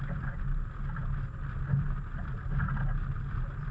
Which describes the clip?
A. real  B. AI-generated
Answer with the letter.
A